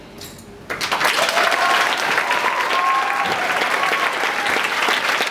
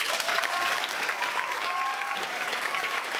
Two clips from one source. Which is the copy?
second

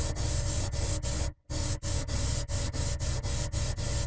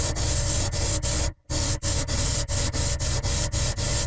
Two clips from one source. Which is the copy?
second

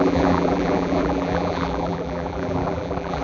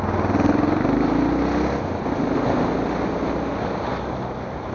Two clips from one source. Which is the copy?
first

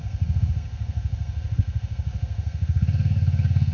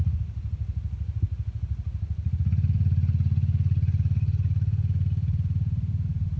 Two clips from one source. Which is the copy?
first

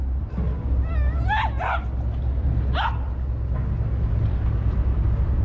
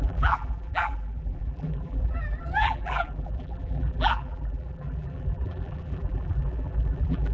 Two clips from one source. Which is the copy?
second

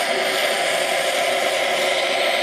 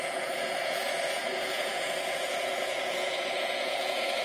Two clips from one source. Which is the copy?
second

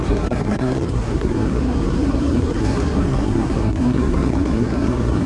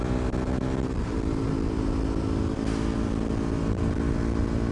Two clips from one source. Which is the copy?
first